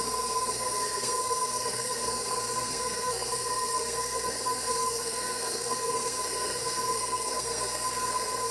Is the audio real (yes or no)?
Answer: no